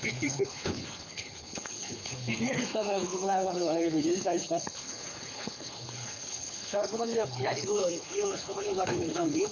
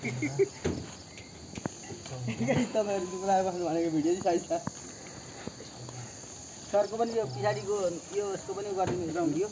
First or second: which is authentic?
second